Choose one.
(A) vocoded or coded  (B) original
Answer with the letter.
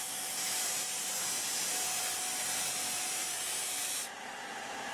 A